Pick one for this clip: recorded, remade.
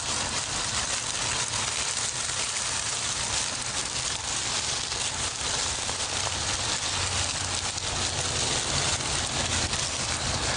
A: recorded